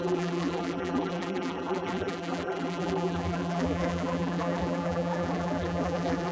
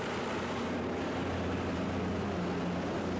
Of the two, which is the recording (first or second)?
second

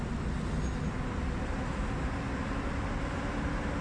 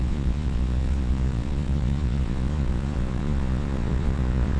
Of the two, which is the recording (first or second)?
first